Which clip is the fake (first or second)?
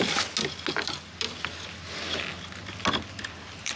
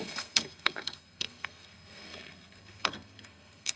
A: second